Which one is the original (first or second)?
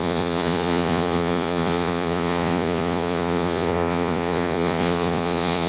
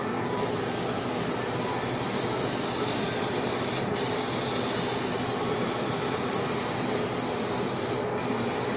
second